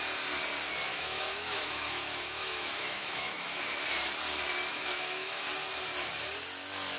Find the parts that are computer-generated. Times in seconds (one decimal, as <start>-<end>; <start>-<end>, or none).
0.9-3.6; 4.7-5.5